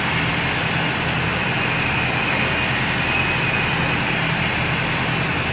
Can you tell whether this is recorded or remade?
recorded